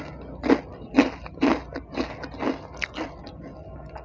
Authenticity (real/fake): real